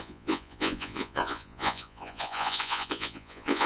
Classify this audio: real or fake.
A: fake